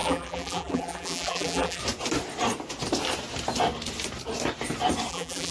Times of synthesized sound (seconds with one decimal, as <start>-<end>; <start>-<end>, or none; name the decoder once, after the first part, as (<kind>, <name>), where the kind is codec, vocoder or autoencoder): 0.0-1.8 (vocoder, BigVGAN v2); 5.1-5.5